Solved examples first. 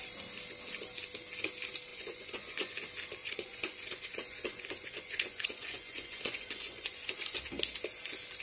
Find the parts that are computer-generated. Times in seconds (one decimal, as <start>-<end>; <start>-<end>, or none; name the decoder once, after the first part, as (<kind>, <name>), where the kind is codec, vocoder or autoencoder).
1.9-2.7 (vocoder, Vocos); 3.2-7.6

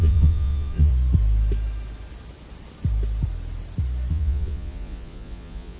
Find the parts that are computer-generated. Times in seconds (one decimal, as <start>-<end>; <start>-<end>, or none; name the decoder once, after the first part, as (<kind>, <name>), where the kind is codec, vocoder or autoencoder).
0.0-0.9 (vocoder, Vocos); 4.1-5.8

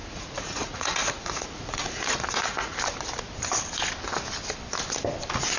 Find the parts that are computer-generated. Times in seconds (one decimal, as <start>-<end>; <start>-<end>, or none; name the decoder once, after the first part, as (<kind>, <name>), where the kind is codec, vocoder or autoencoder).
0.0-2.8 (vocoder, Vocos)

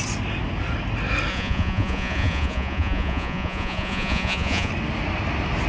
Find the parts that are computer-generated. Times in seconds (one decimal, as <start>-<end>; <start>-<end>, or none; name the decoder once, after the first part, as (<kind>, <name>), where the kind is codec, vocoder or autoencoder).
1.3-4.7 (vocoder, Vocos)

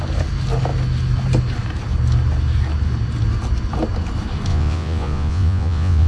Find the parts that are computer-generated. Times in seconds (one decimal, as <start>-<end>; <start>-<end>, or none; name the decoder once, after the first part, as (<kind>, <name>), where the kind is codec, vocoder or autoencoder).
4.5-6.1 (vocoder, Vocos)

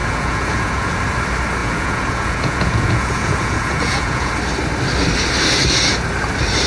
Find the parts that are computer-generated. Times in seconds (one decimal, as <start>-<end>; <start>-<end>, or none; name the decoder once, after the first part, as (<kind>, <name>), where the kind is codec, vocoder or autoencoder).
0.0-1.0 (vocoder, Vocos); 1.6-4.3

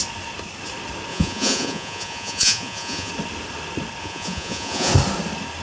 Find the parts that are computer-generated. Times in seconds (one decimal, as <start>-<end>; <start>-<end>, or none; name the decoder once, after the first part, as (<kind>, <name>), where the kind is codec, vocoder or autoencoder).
1.1-3.1 (vocoder, Vocos); 4.0-4.9